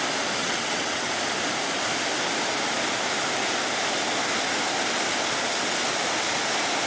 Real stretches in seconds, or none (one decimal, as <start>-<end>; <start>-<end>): 0.0-0.4; 1.1-6.9

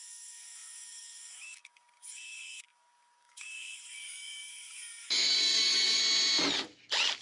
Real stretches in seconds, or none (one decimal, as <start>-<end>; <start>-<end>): 6.0-7.2

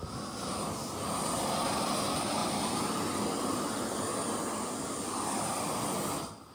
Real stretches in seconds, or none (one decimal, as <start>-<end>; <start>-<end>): 0.0-6.5

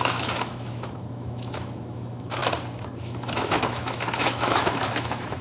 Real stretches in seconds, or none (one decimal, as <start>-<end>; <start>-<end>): 2.4-3.0

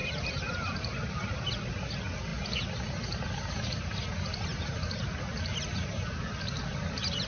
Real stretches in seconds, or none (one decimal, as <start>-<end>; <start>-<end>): 0.0-7.3

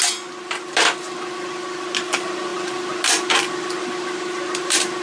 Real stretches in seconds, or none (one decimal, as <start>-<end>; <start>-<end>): 0.0-5.0

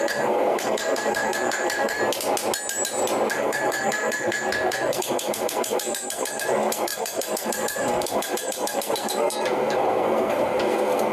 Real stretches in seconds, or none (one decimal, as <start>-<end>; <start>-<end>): 2.0-3.3

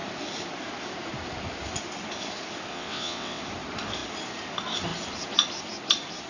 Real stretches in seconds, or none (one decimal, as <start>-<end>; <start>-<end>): 0.0-2.7; 3.4-6.3